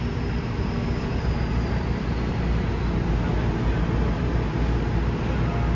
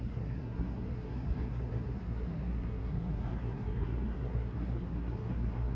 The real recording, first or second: first